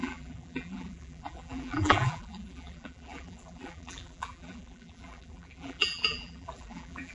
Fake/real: fake